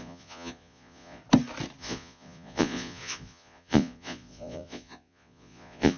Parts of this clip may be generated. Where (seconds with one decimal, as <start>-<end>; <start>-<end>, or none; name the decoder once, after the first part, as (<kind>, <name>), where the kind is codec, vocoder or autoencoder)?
0.0-1.2 (vocoder, Vocos); 1.8-6.0